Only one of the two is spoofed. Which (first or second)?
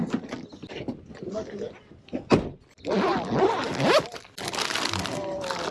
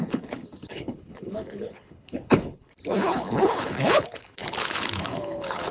second